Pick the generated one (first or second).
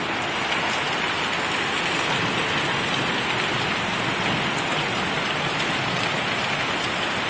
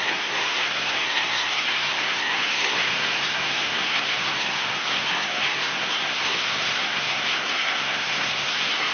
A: second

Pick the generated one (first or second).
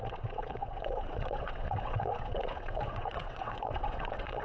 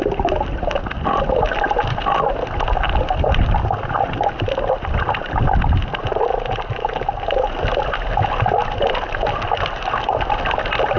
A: first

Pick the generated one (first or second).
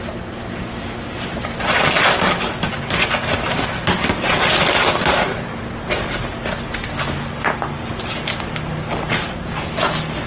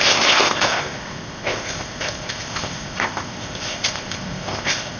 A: second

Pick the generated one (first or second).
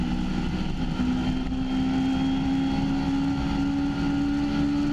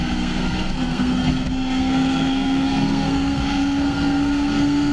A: second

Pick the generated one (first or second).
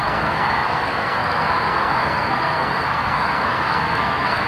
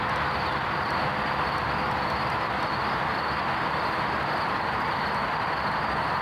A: first